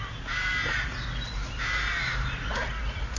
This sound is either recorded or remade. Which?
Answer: remade